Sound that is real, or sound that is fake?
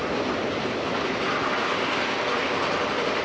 real